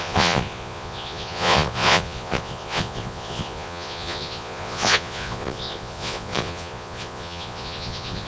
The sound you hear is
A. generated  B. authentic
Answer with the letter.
A